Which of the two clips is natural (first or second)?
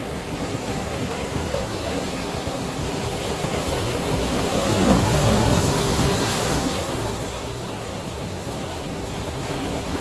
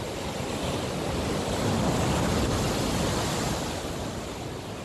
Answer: second